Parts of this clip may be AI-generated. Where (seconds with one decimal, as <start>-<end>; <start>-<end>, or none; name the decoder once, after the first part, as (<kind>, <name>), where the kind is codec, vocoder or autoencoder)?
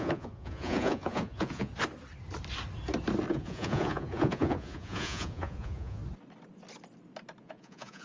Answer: 0.0-1.7 (vocoder, Vocos); 3.3-6.0; 7.4-8.0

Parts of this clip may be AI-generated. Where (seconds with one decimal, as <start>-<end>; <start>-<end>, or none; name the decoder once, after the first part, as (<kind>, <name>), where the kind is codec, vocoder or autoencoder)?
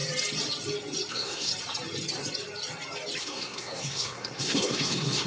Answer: 1.1-1.5 (codec, SNAC); 3.2-5.3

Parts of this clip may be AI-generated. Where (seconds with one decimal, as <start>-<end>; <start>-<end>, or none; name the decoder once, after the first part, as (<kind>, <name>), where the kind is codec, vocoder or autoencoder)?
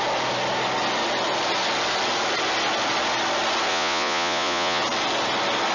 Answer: 3.7-4.8 (vocoder, Vocos)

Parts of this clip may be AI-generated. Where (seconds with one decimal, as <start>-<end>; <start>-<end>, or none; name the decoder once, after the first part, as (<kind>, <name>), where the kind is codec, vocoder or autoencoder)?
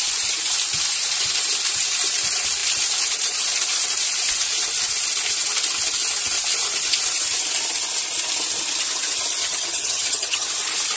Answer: 9.4-10.5 (vocoder, HiFi-GAN)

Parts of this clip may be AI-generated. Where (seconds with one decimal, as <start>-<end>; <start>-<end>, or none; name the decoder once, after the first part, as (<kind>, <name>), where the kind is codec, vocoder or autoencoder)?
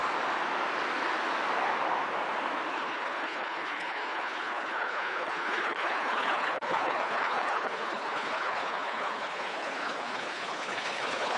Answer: 2.7-11.4 (codec, HILCodec)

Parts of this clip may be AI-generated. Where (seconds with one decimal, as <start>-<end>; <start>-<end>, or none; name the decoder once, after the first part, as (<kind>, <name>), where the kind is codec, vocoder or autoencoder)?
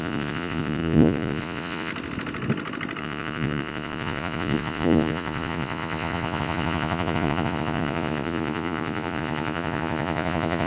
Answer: 0.0-1.9 (vocoder, Vocos); 3.0-10.7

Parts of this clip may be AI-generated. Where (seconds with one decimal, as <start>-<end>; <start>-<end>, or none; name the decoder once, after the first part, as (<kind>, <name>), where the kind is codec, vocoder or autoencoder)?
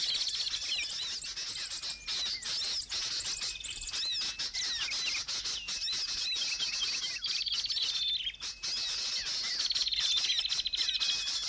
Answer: none